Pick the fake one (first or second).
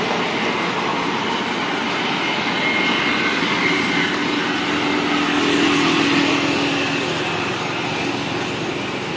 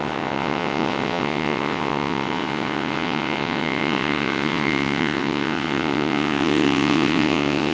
second